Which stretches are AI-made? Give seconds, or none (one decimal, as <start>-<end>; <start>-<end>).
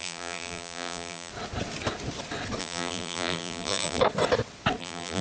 0.0-1.3; 2.6-4.0; 4.8-5.2